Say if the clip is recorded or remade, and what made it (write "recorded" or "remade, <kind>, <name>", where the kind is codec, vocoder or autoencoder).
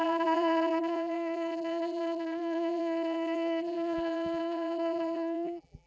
remade, vocoder, BigVGAN v2